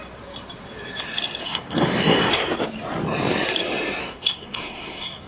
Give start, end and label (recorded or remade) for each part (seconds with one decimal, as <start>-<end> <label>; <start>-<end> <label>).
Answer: 0.0-1.4 recorded; 1.4-2.3 remade; 2.3-4.0 recorded; 4.0-5.3 remade